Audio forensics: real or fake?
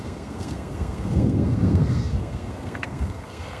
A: fake